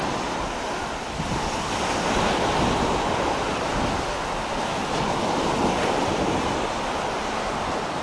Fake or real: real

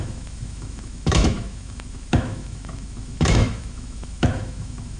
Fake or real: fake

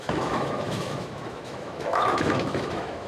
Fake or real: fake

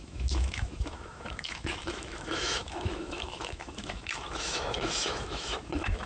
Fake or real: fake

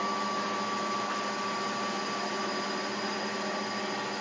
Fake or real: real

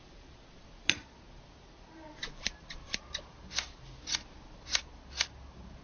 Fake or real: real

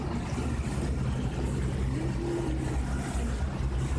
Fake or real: real